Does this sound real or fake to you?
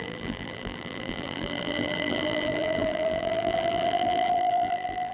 fake